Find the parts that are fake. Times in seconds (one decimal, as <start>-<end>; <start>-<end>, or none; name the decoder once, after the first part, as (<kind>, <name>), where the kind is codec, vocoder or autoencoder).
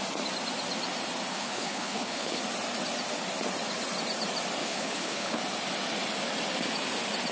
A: 1.3-2.4 (codec, HILCodec); 4.6-5.4